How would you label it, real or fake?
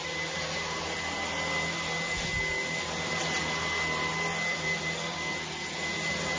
real